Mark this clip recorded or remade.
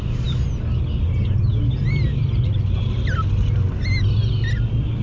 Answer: recorded